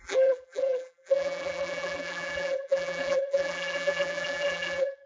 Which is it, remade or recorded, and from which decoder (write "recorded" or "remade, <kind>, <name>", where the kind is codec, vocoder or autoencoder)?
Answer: remade, vocoder, BigVGAN v2